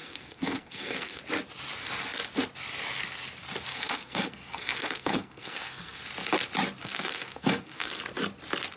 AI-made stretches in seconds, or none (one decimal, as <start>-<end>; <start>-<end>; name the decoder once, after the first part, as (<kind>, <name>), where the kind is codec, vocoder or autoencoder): 0.0-1.2 (codec, SNAC); 3.7-6.0; 6.8-8.0

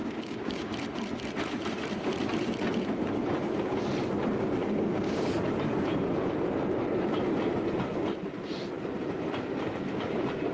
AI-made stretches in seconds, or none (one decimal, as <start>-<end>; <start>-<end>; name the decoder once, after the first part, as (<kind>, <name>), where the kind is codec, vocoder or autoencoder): 0.0-0.7 (codec, DAC); 4.6-5.3

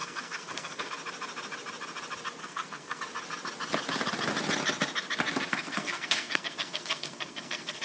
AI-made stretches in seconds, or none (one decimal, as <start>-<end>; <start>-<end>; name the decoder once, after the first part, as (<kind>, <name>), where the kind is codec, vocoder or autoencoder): 0.0-0.9 (codec, SNAC); 2.4-3.0; 5.5-7.8